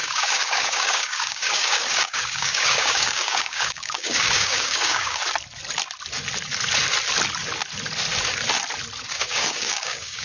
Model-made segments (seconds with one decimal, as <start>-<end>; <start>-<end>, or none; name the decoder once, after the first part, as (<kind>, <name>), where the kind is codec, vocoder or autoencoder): 0.0-5.2 (codec, DAC); 9.1-10.2